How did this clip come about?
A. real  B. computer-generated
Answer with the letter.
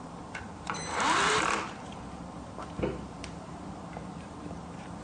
B